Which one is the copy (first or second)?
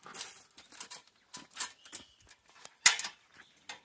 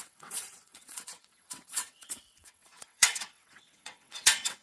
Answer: second